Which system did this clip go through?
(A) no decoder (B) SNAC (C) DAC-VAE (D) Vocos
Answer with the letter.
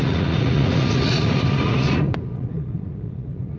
D